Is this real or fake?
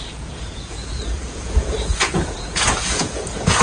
fake